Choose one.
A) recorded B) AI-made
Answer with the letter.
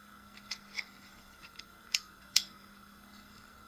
B